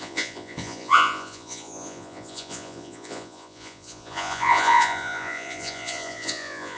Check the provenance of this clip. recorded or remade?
remade